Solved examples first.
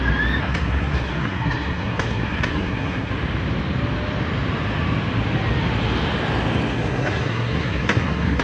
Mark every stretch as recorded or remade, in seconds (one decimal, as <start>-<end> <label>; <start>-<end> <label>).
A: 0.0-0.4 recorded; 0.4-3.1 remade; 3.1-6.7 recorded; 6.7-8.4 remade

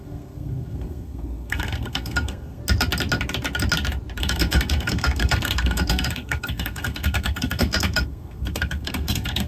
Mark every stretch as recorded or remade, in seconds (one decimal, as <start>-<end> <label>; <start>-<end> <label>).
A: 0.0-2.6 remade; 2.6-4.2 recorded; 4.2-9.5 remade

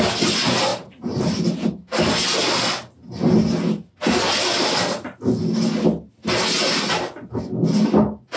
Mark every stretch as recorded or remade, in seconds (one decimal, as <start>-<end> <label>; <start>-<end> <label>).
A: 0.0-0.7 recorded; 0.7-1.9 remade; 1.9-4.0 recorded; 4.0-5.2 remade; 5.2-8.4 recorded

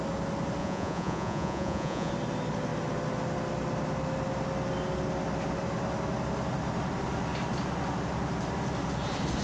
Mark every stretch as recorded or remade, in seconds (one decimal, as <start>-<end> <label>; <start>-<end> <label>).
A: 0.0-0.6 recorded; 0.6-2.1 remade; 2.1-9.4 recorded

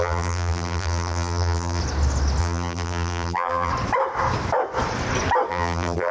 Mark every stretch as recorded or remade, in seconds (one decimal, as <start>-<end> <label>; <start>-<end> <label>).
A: 0.0-1.8 remade; 1.8-2.4 recorded; 2.4-3.7 remade; 3.7-5.5 recorded; 5.5-6.1 remade